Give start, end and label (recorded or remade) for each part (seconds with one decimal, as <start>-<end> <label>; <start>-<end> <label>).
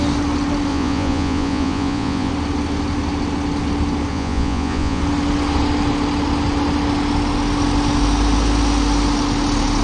0.0-0.7 recorded; 0.7-2.3 remade; 2.3-4.1 recorded; 4.1-5.0 remade; 5.0-9.8 recorded